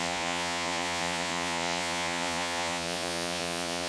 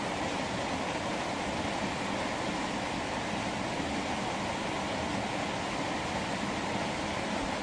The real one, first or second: second